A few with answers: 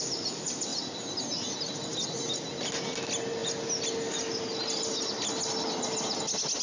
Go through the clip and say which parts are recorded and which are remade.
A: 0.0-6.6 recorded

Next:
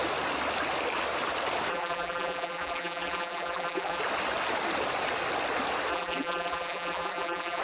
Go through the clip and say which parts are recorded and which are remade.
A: 0.0-1.7 recorded; 1.7-4.0 remade; 4.0-5.9 recorded; 5.9-7.6 remade

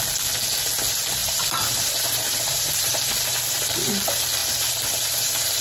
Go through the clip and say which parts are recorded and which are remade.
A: 0.0-1.2 recorded; 1.2-3.1 remade; 3.1-4.4 recorded; 4.4-5.6 remade

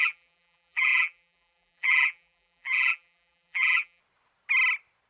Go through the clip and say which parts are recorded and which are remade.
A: 0.0-4.0 remade; 4.0-5.1 recorded

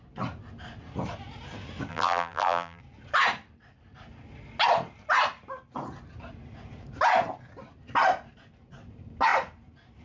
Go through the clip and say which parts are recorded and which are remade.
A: 0.0-1.9 recorded; 1.9-2.8 remade; 2.8-10.0 recorded